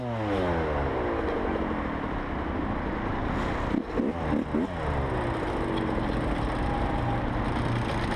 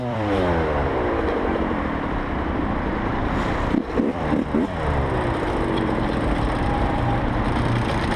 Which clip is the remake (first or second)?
second